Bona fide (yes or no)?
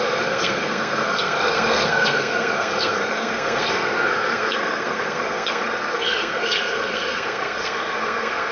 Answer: no